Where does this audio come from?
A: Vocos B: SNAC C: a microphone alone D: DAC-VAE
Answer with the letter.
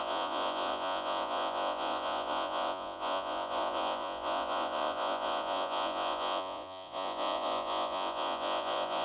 A